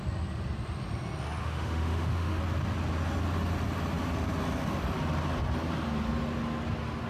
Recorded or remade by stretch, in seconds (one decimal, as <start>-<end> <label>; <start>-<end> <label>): 0.0-1.4 recorded; 1.4-2.4 remade; 2.4-7.1 recorded